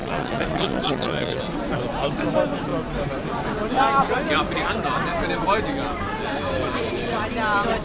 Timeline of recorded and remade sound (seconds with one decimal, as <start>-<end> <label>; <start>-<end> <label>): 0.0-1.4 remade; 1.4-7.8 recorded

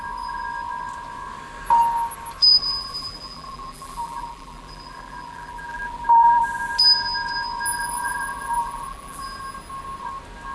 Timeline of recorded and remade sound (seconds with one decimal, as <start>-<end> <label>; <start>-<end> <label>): 0.0-2.4 recorded; 2.4-6.4 remade; 6.4-7.7 recorded; 7.7-9.2 remade; 9.2-10.5 recorded

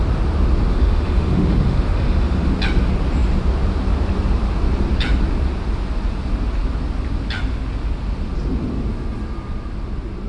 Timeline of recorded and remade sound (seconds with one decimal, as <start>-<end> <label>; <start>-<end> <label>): 0.0-0.7 recorded; 0.7-2.5 remade; 2.5-10.3 recorded

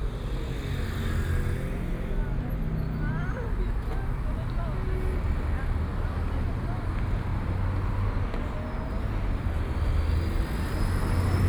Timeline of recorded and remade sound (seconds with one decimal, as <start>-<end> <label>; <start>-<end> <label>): 0.0-11.5 recorded